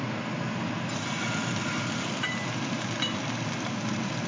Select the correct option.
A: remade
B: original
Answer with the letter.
B